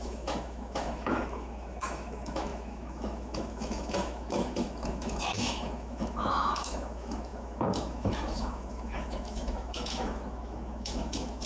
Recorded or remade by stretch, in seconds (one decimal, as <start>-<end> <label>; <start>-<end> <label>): 0.0-11.5 remade